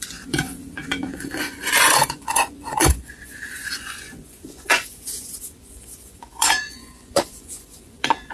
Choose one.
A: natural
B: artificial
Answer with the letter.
B